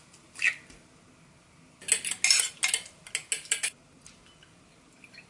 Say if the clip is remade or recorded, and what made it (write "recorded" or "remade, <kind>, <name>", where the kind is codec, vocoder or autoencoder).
recorded